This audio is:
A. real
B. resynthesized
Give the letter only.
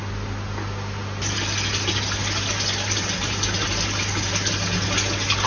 A